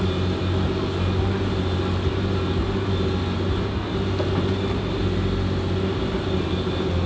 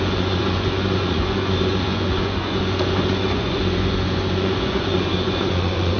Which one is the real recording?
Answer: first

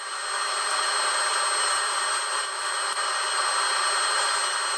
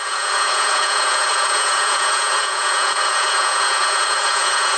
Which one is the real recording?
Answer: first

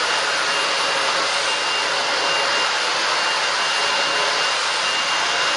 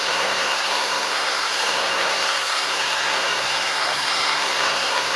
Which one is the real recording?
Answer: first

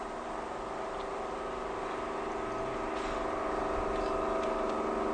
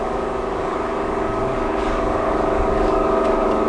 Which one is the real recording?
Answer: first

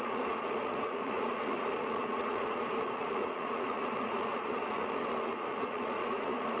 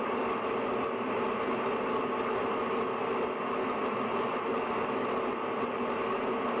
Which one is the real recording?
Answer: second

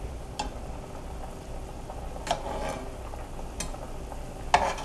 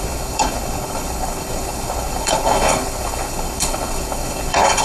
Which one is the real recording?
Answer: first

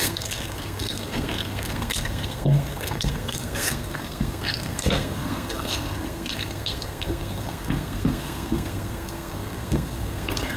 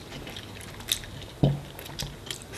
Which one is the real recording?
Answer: second